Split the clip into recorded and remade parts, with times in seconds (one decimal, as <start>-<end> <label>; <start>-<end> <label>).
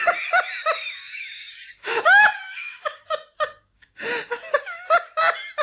0.0-1.0 recorded; 1.0-4.0 remade; 4.0-5.6 recorded